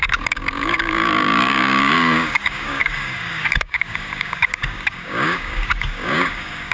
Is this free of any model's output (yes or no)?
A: no